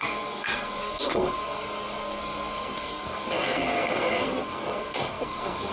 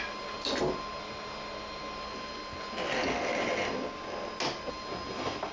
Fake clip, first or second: first